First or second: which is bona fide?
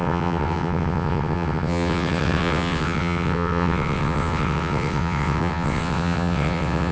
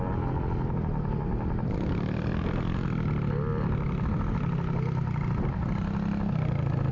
second